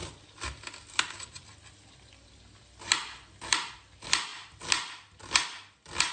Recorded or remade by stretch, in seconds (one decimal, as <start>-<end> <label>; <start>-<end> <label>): 0.0-6.1 recorded